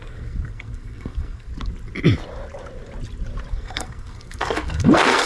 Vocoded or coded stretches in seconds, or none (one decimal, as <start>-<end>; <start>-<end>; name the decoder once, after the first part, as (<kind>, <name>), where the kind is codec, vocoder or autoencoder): 0.0-1.5 (codec, SNAC); 3.5-5.3